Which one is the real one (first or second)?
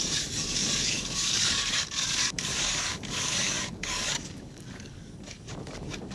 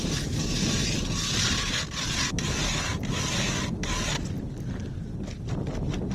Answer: second